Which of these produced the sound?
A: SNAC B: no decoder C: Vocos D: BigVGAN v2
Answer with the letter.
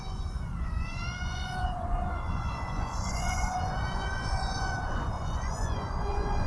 C